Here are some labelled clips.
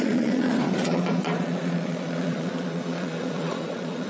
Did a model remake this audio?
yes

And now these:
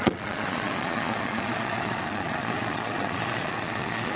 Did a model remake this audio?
yes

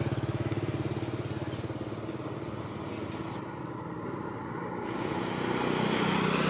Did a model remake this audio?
no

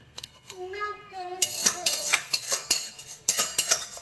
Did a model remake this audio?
yes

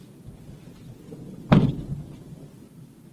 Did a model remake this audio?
yes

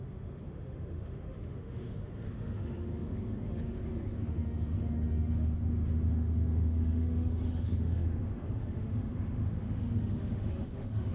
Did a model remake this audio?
yes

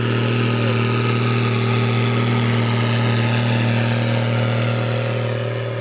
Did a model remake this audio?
no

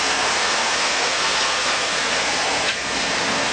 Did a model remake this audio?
yes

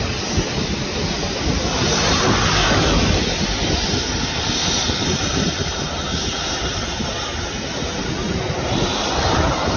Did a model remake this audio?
no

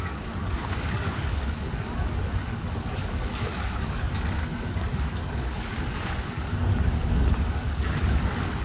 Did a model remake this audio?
yes